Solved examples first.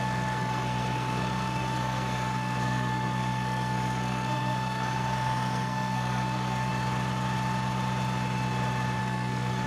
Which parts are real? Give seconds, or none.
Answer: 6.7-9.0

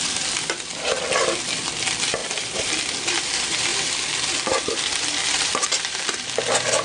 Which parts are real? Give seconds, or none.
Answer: none

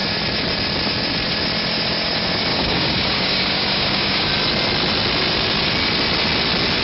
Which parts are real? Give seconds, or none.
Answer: 0.0-2.5; 4.3-6.8

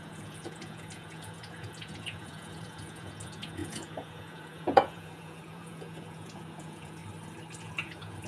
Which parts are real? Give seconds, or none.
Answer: 7.0-7.6

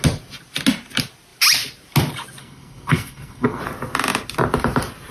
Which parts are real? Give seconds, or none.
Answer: 0.0-2.4; 3.6-5.1